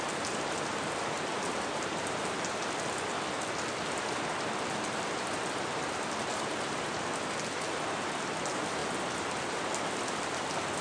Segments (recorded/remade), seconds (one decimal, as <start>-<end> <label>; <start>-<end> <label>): 0.0-10.8 recorded